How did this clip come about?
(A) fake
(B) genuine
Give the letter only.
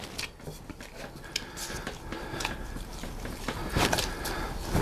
B